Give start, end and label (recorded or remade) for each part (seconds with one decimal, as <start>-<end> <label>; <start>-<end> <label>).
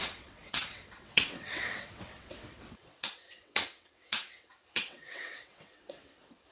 0.0-6.5 remade